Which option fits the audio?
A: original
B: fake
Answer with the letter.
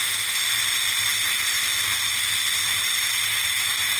A